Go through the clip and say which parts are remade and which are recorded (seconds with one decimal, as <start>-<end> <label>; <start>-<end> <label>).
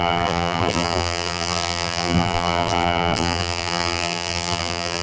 0.0-5.0 remade